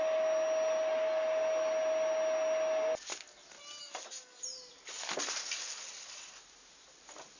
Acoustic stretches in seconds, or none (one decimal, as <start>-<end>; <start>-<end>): 0.0-3.8; 4.4-7.4